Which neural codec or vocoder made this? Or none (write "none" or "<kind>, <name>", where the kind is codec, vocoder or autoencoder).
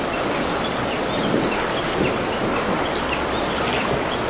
none